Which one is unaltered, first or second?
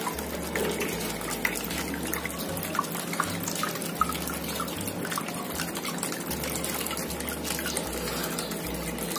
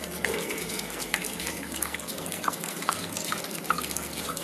first